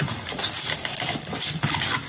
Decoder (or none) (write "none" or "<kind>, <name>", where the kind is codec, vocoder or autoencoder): none